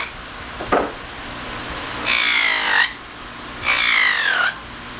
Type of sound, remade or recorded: recorded